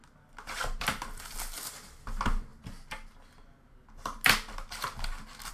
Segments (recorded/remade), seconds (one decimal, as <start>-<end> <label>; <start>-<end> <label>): 0.0-5.5 recorded